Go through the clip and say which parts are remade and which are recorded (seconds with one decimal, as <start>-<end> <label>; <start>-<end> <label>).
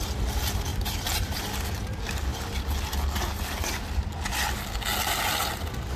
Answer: 0.0-0.7 recorded; 0.7-1.4 remade; 1.4-6.0 recorded